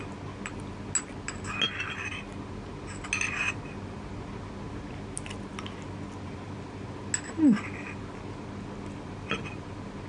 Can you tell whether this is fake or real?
real